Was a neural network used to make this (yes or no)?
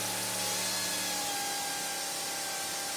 no